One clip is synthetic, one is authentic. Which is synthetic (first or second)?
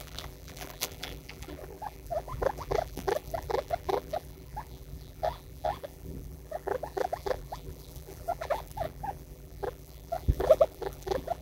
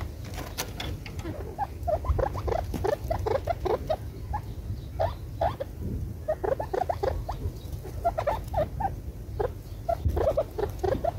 first